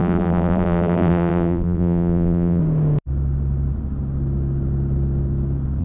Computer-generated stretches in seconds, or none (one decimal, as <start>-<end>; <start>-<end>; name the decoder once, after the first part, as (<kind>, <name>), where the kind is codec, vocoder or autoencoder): 0.0-2.6 (vocoder, BigVGAN v2)